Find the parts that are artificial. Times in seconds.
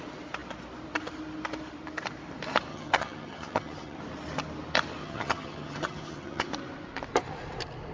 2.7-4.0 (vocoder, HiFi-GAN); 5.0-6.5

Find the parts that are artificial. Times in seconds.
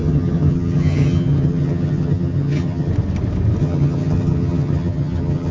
0.0-2.9 (vocoder, HiFi-GAN); 3.6-5.5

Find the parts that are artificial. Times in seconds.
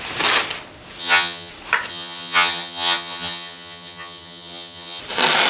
1.0-1.5 (vocoder, HiFi-GAN); 1.9-5.0